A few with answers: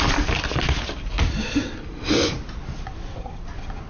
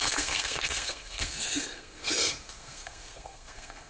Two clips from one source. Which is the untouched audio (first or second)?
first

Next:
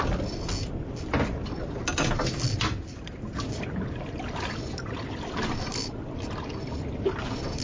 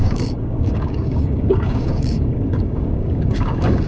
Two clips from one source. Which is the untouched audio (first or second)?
first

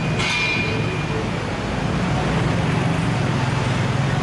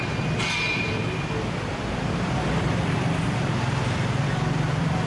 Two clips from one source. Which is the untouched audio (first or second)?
first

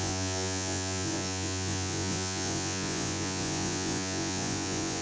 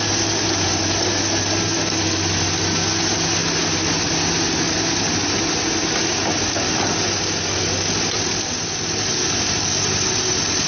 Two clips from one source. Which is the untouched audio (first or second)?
second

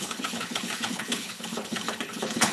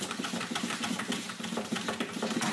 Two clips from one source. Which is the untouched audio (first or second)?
second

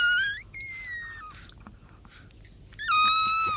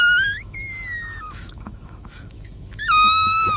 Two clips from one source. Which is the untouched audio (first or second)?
first